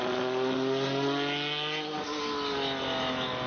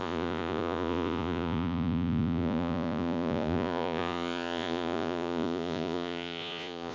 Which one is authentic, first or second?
first